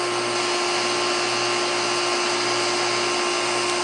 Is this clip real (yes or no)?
yes